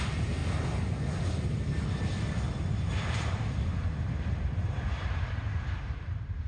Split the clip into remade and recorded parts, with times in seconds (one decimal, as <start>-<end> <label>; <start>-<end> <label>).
0.0-0.4 remade; 0.4-2.9 recorded; 2.9-6.5 remade